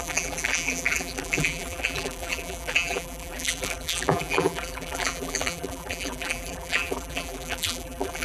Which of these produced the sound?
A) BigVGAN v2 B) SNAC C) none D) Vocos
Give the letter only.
A